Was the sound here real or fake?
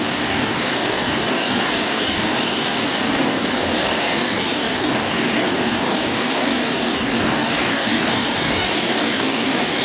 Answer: fake